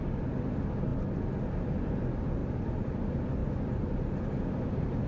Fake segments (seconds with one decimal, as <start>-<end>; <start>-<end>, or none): none